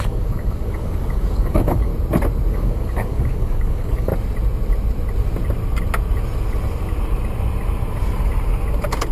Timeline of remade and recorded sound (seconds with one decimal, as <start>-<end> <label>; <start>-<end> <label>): 0.0-1.9 remade; 1.9-2.5 recorded; 2.5-4.1 remade; 4.1-9.1 recorded